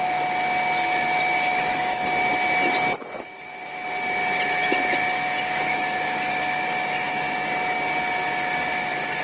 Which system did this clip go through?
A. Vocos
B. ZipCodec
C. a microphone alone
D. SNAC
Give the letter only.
C